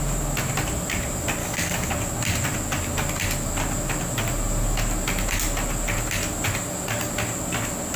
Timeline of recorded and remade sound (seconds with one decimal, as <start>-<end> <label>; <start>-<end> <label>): 0.0-1.4 recorded; 1.4-1.9 remade; 1.9-8.0 recorded